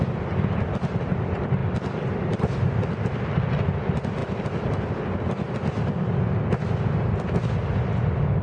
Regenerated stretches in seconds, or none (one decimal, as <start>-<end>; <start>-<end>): none